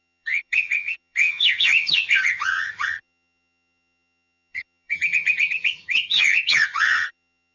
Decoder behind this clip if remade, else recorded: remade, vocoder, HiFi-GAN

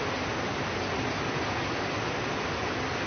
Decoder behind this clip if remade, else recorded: recorded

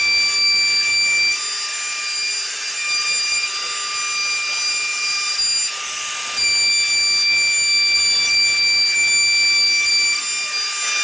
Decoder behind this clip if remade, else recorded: recorded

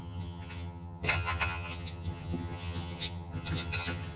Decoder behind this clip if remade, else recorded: remade, vocoder, HiFi-GAN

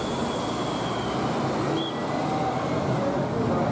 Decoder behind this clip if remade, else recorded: recorded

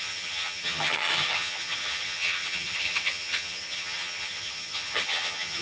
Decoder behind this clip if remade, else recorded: remade, vocoder, HiFi-GAN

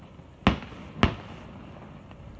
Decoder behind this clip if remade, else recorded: recorded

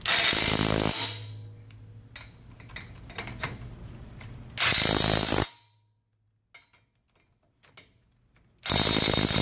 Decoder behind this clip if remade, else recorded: recorded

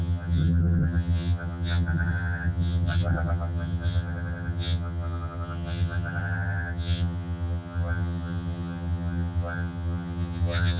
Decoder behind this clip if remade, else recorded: remade, vocoder, HiFi-GAN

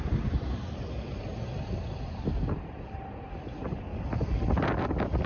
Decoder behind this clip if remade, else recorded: recorded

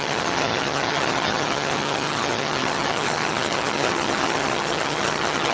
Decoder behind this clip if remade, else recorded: remade, vocoder, HiFi-GAN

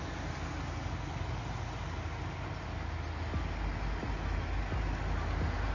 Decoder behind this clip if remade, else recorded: recorded